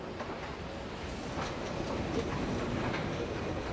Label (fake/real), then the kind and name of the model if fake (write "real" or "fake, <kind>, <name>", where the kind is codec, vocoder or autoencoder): real